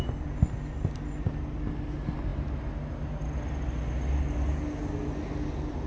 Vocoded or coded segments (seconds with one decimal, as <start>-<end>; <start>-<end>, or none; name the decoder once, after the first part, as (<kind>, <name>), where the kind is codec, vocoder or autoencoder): none